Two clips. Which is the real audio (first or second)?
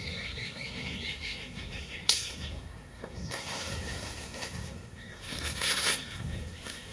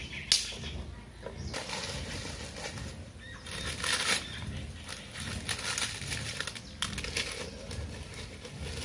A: second